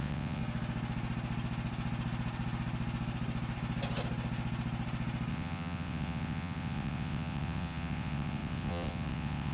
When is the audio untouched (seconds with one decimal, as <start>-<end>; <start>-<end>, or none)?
0.4-5.3